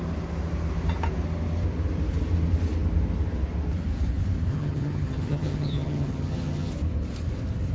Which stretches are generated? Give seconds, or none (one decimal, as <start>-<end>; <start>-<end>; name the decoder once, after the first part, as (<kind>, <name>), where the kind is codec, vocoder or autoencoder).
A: 4.5-6.7 (vocoder, HiFi-GAN)